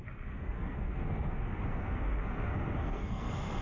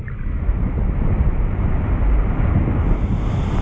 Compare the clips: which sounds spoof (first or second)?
first